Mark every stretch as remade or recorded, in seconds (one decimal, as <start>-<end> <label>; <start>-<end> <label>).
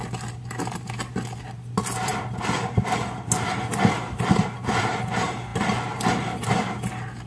0.0-7.3 recorded